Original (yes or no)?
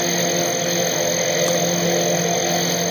yes